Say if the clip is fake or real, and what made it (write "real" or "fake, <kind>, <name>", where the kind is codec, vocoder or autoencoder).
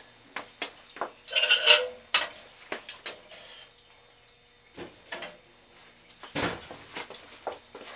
real